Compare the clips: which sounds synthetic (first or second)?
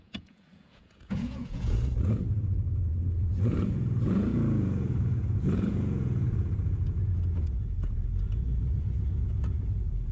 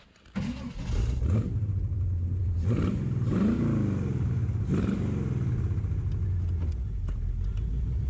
first